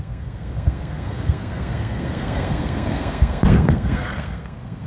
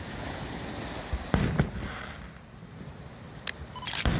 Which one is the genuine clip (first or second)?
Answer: second